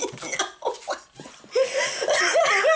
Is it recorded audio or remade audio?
recorded